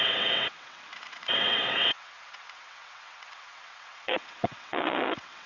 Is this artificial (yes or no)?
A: yes